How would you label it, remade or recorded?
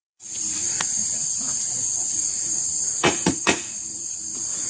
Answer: remade